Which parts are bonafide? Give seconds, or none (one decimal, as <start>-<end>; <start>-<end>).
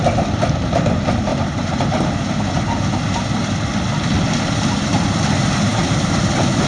0.0-1.3; 2.1-5.7; 6.2-6.7